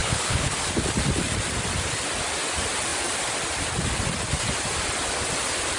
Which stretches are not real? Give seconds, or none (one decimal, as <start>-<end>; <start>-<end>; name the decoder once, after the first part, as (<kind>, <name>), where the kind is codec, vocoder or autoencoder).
0.0-0.5 (codec, HILCodec)